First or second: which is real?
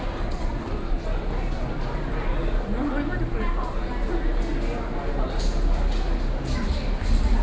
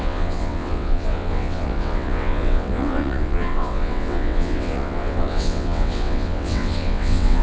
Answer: first